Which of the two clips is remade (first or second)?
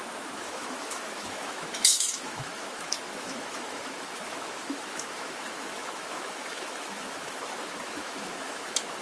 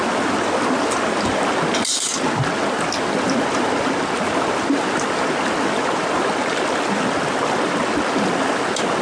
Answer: first